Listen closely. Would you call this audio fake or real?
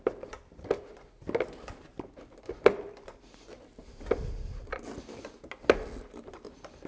real